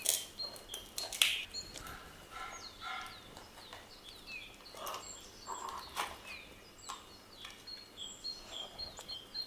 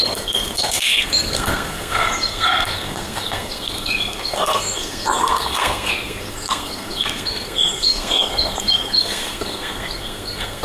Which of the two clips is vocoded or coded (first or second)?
second